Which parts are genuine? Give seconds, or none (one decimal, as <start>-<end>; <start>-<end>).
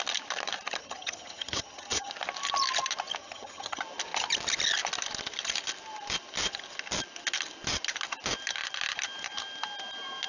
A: 0.0-0.8; 2.1-3.2; 3.8-10.3